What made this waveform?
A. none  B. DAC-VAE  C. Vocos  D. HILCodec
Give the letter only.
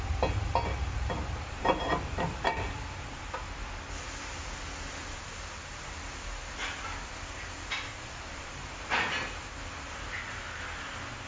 A